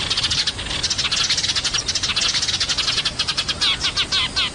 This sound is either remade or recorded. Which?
recorded